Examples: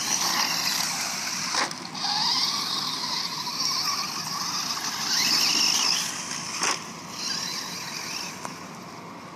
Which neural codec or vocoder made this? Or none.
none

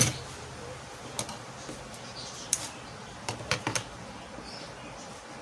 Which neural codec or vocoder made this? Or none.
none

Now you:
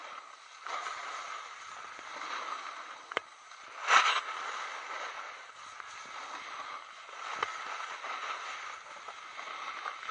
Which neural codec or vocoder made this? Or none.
none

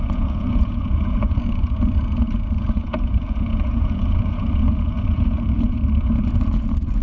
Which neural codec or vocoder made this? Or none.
vocoder, Vocos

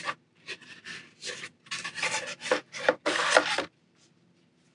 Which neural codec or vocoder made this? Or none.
vocoder, BigVGAN v2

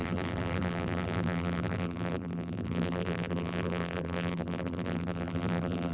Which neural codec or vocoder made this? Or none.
vocoder, BigVGAN v2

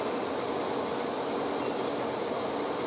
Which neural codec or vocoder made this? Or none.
none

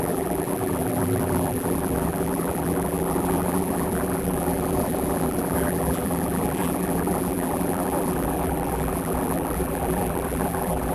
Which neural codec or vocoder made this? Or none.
vocoder, BigVGAN v2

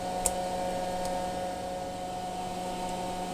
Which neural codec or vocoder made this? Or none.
none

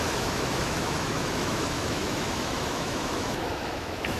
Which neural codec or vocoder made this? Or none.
autoencoder, DAC-VAE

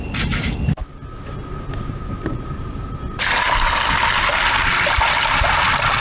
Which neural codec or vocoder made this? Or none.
none